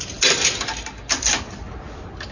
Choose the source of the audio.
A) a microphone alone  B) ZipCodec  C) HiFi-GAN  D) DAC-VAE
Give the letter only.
A